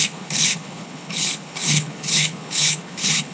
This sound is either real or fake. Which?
fake